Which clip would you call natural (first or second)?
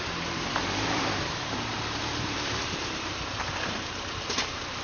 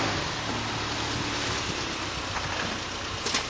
second